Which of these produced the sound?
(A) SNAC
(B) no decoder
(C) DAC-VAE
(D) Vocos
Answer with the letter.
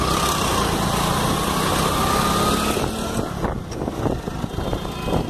B